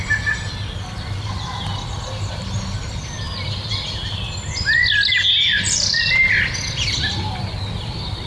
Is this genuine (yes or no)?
yes